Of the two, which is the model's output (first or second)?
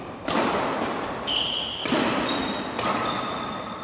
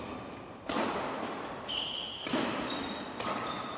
second